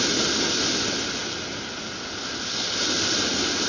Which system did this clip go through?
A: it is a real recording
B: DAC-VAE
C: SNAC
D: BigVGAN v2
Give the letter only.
A